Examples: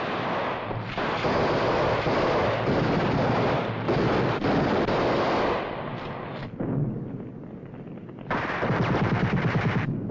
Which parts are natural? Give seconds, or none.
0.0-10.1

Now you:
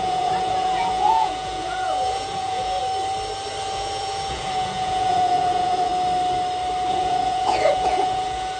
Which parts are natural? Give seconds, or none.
2.8-3.6; 5.9-6.9